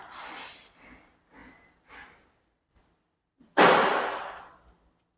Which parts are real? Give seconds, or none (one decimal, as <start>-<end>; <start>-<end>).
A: 0.0-1.4; 4.3-5.2